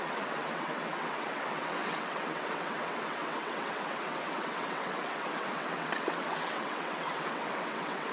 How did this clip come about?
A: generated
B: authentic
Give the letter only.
A